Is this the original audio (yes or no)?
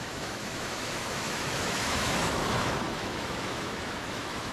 no